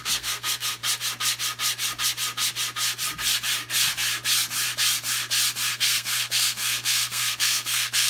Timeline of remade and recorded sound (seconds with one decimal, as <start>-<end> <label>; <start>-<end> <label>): 0.0-0.8 remade; 0.8-5.7 recorded; 5.7-8.1 remade